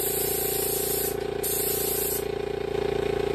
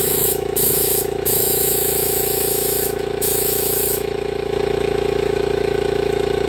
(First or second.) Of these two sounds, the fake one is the second